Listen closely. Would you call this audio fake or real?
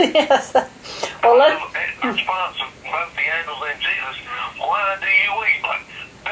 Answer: real